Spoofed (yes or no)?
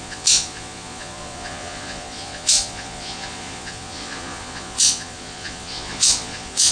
yes